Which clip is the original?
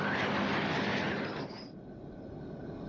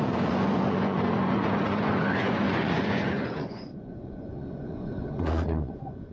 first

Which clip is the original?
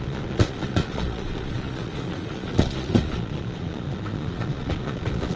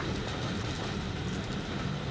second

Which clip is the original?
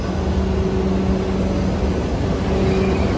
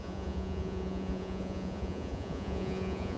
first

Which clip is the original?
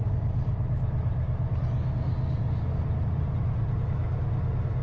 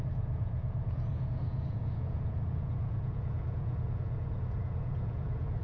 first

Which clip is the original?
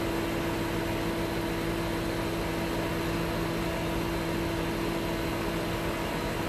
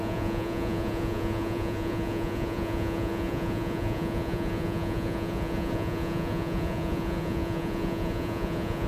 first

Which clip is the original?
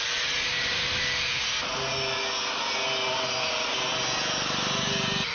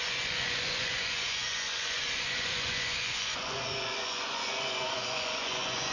first